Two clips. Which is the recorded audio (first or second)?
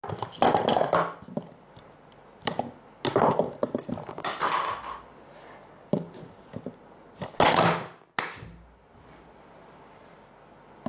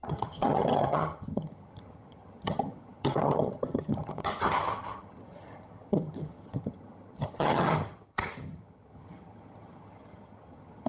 first